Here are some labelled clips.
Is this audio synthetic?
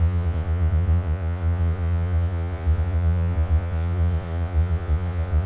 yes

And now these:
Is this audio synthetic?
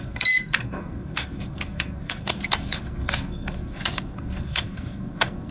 yes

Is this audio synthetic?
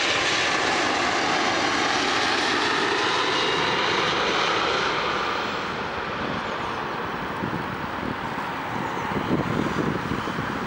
no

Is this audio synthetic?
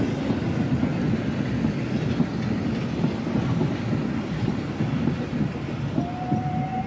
no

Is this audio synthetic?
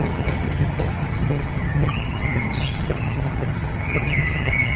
yes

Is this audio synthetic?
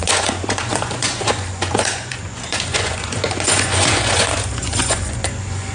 yes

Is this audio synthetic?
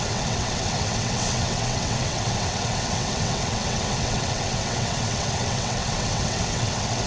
yes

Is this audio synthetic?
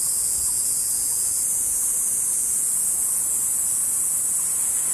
yes